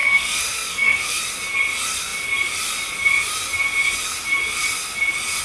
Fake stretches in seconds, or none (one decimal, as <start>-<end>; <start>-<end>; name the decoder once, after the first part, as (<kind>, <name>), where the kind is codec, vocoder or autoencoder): 0.0-1.2 (codec, SNAC)